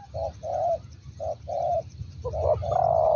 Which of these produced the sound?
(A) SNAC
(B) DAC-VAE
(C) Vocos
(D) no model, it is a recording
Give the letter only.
D